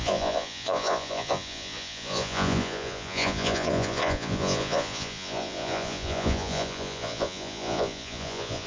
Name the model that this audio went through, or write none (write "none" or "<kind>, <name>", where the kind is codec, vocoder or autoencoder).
vocoder, Vocos